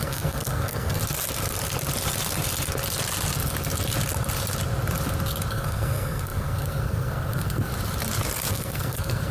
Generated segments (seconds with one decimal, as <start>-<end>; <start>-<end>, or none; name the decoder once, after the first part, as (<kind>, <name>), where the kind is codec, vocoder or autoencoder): 0.0-1.0 (codec, SNAC); 5.5-7.7; 8.5-9.3